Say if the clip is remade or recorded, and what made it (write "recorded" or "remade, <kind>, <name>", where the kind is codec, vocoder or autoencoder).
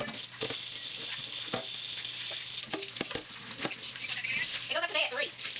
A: recorded